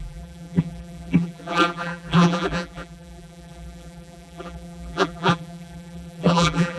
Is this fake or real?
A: fake